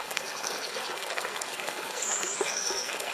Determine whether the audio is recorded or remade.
remade